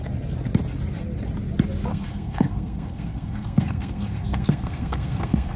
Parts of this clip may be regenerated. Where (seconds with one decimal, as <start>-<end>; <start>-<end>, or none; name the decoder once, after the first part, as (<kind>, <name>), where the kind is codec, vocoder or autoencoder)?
1.9-5.6 (codec, SNAC)